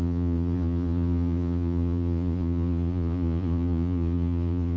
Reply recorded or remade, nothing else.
remade